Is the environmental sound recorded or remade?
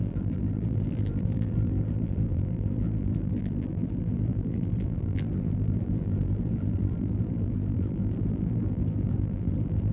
remade